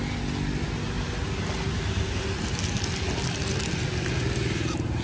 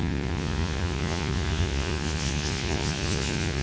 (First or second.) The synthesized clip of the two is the second